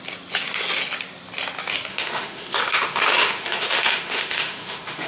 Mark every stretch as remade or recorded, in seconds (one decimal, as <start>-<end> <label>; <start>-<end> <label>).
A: 0.0-1.9 recorded; 1.9-5.1 remade